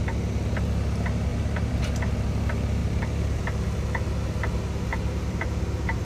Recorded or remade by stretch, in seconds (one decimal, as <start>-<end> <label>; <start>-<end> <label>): 0.0-1.3 recorded; 1.3-1.8 remade; 1.8-2.8 recorded; 2.8-3.4 remade; 3.4-4.9 recorded; 4.9-6.0 remade